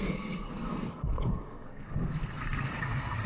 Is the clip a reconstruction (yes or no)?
yes